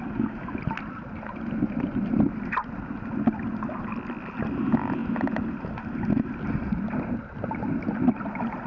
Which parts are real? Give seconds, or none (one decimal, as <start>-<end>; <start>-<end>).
0.0-8.7

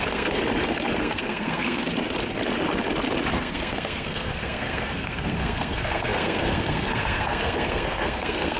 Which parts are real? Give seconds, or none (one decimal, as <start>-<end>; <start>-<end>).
0.4-1.0; 1.8-3.3

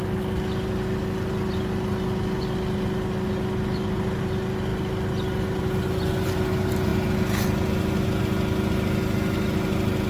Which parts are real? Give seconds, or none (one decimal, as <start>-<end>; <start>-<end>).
0.0-10.1

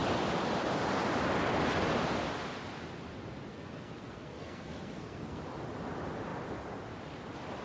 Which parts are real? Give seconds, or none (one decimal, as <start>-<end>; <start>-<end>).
0.0-3.5; 5.4-7.6